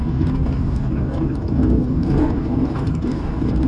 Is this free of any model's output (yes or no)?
no